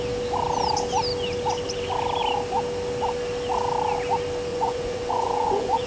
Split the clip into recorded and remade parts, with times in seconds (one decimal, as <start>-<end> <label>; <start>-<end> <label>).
0.0-4.5 recorded; 4.5-5.9 remade

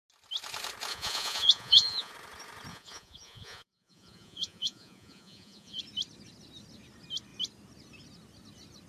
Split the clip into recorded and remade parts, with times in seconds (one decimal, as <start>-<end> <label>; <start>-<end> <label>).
0.0-0.9 recorded; 0.9-2.1 remade; 2.1-2.7 recorded; 2.7-5.8 remade; 5.8-8.9 recorded

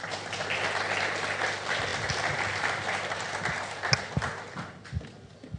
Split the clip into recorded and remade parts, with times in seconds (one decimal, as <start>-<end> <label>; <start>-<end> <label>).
0.0-5.6 recorded

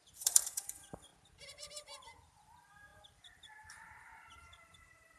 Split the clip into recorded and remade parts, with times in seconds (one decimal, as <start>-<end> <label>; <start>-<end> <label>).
0.0-1.1 remade; 1.1-1.7 recorded; 1.7-5.2 remade

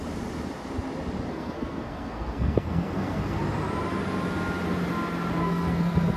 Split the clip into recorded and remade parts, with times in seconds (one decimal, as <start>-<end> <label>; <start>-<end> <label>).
0.0-1.3 recorded; 1.3-3.4 remade; 3.4-5.4 recorded; 5.4-6.2 remade

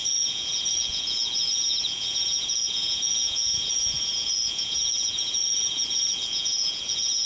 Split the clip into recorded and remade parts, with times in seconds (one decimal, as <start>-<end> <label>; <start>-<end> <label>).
0.0-7.3 remade

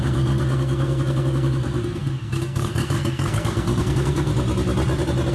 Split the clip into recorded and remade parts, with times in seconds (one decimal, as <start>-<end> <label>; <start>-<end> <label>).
0.0-4.3 remade; 4.3-5.3 recorded

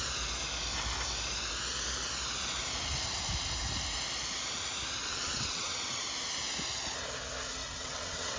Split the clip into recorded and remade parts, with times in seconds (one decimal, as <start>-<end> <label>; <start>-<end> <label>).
0.0-5.0 recorded; 5.0-6.0 remade; 6.0-7.6 recorded; 7.6-8.4 remade